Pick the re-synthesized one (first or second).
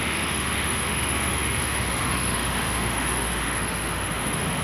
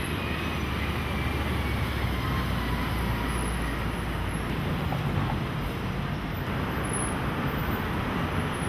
first